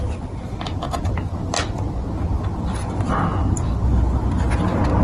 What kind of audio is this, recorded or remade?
recorded